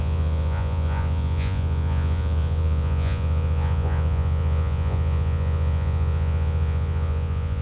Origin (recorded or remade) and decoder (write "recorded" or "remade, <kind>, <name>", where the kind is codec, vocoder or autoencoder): remade, vocoder, Vocos